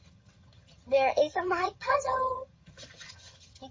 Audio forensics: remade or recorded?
remade